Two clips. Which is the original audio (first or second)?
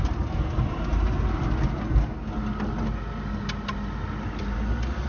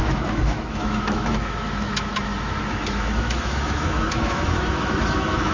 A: first